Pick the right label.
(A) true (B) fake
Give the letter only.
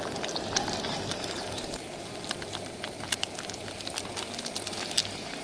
B